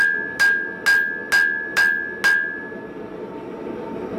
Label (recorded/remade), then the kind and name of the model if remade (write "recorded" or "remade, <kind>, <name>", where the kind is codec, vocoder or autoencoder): recorded